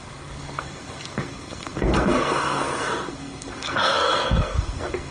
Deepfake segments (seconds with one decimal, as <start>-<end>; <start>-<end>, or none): 0.0-5.1